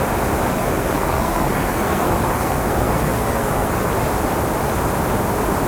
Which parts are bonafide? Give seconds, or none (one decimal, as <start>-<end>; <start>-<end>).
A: 0.0-0.5; 3.9-5.7